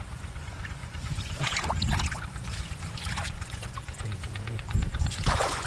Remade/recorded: remade